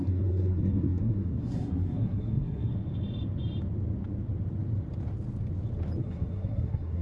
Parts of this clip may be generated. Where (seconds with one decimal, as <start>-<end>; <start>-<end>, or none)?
0.0-2.7; 6.0-7.0

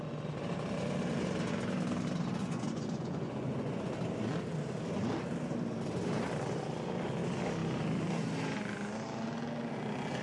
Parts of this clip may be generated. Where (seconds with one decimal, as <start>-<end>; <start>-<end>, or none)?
2.4-3.9

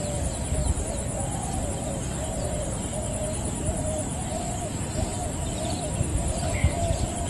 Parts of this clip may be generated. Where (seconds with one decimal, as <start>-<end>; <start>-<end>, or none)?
0.6-1.7; 2.1-5.5; 6.1-6.8

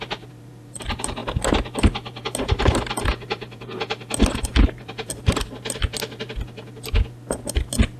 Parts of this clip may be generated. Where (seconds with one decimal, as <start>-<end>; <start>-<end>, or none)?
none

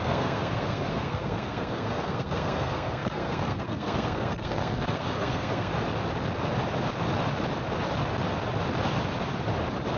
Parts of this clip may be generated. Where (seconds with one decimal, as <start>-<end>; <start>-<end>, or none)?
0.0-5.7

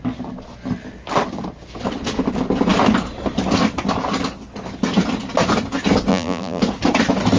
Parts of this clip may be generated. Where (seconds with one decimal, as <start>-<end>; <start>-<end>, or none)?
6.1-6.6

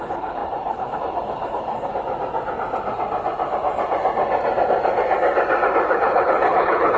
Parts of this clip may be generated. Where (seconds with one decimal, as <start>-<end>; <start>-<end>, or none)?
0.0-1.9; 5.9-7.0

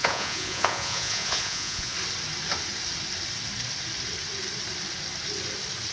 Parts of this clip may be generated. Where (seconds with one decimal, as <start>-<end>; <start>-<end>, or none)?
0.0-1.9